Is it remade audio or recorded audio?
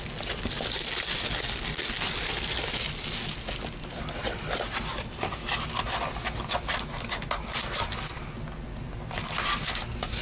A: recorded